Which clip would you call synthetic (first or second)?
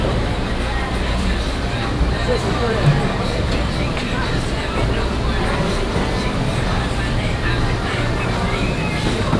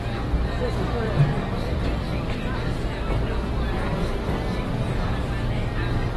first